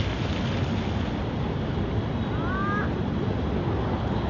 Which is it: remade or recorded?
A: recorded